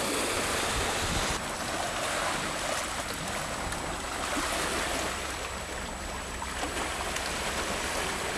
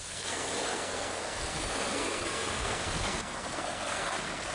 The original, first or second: first